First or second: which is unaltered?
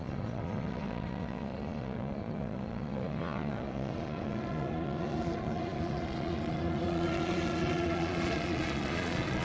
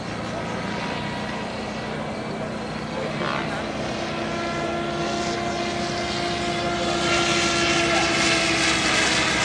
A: second